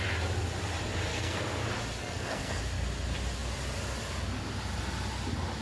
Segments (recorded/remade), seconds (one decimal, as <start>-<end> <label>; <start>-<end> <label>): 0.0-1.1 recorded; 1.1-1.6 remade; 1.6-2.0 recorded; 2.0-2.6 remade; 2.6-5.6 recorded